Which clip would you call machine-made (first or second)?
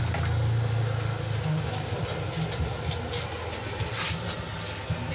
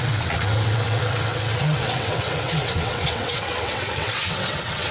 second